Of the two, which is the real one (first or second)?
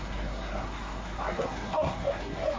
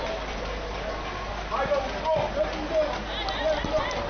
second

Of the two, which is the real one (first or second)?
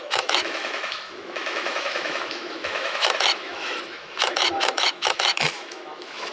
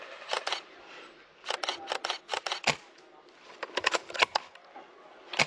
second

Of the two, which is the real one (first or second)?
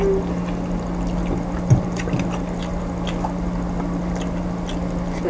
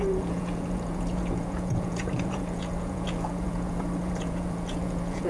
first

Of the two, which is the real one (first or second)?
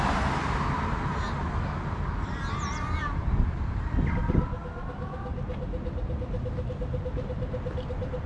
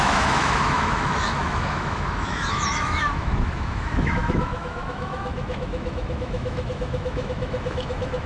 first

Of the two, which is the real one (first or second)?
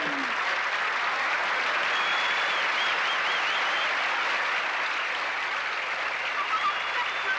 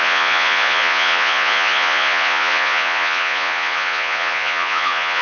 first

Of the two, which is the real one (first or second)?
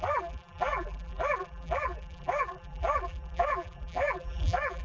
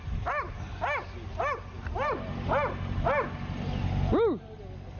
second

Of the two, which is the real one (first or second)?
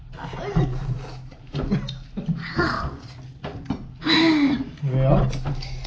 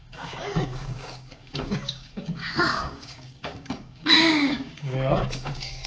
first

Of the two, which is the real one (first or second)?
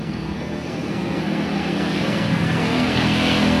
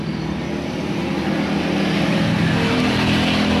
second